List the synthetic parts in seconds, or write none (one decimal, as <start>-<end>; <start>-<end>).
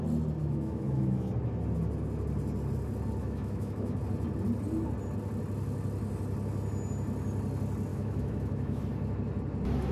0.4-1.3; 3.2-4.0; 7.9-8.8